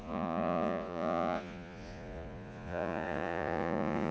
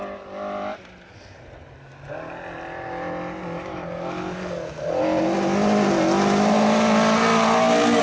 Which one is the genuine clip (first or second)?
second